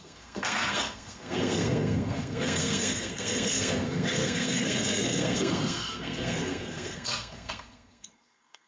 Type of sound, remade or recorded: remade